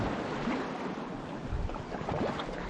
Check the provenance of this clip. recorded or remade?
recorded